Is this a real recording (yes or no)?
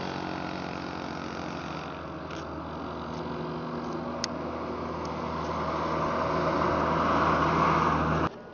yes